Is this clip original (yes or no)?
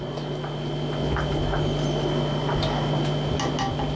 yes